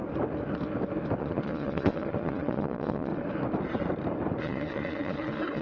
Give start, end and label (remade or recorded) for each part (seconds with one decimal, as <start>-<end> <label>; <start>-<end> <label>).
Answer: 0.0-1.2 recorded; 1.2-3.1 remade; 3.1-4.4 recorded; 4.4-5.6 remade